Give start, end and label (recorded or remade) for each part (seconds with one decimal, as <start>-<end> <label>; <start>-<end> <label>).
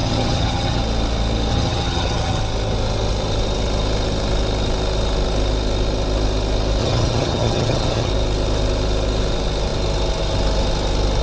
0.0-0.8 remade; 0.8-1.5 recorded; 1.5-2.4 remade; 2.4-6.8 recorded; 6.8-8.1 remade; 8.1-11.2 recorded